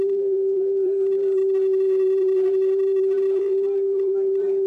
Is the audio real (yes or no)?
no